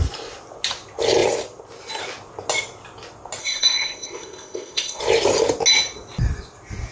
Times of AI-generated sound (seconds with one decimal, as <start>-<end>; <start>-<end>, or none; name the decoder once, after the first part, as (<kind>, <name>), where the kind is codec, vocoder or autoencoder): 3.4-5.0 (codec, ZipCodec)